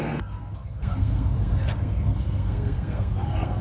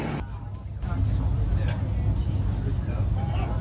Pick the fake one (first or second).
first